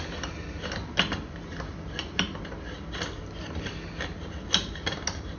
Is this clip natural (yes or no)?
yes